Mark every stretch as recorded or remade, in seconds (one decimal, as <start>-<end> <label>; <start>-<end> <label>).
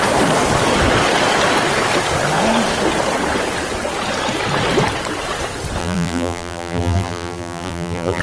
0.0-5.8 recorded; 5.8-8.2 remade